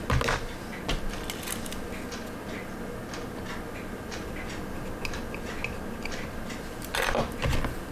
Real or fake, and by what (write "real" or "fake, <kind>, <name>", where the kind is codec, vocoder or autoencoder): real